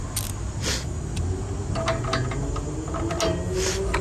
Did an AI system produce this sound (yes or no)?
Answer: no